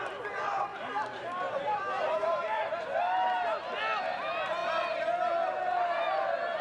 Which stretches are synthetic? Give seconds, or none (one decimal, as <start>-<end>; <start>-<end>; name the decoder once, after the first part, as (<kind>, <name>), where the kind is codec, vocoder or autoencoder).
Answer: 0.7-3.0 (vocoder, BigVGAN v2)